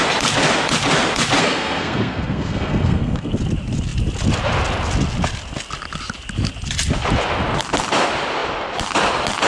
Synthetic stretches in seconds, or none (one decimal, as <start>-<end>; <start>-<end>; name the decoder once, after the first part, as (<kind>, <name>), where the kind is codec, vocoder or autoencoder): 1.4-3.3 (codec, SNAC)